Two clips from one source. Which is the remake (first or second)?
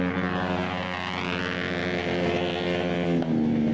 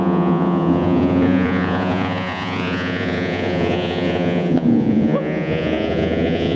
second